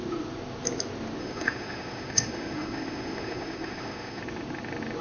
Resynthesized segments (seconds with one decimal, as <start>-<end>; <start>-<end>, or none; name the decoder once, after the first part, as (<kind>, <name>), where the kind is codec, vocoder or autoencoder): 1.2-4.2 (autoencoder, DAC-VAE)